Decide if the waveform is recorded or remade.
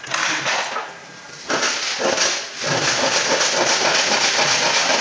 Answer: recorded